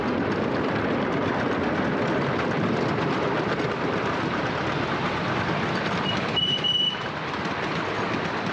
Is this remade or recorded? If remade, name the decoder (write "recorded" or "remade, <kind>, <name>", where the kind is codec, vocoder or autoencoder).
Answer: recorded